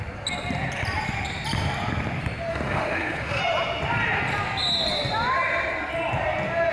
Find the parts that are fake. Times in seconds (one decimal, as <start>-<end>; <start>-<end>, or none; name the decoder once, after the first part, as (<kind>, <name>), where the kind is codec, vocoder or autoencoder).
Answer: 2.5-3.4 (autoencoder, DAC-VAE)